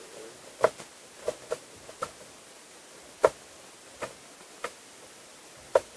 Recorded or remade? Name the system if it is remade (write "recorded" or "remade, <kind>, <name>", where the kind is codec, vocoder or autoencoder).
recorded